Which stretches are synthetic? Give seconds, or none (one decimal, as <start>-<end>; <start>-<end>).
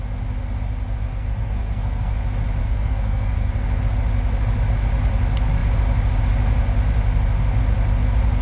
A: 1.1-2.2; 2.6-3.8